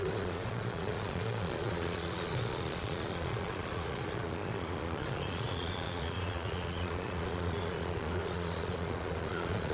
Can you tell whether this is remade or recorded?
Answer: remade